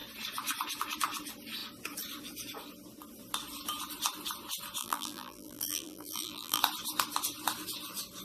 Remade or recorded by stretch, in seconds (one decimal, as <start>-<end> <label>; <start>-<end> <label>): 0.0-4.8 recorded; 4.8-6.6 remade; 6.6-8.2 recorded